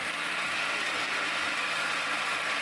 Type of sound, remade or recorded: recorded